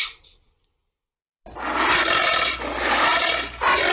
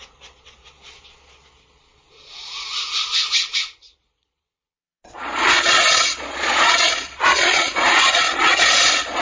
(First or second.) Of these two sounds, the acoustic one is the first